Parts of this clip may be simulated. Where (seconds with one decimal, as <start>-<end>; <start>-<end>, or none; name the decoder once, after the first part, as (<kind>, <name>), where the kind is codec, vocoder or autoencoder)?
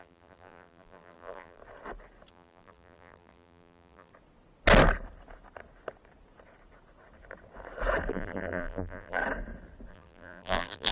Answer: 0.0-1.6 (vocoder, BigVGAN v2); 2.3-4.1; 8.1-9.2; 9.9-10.9